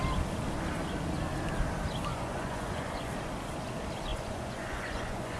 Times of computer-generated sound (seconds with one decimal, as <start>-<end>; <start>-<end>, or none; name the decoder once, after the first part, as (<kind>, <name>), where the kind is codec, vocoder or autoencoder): 2.1-3.1 (vocoder, Vocos); 4.1-5.4